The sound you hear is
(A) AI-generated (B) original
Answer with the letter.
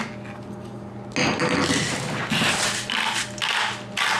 B